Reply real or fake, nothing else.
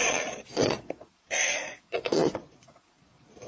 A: fake